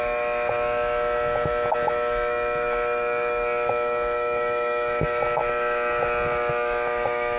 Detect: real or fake fake